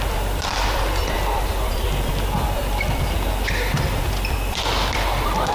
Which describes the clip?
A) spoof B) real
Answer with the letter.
B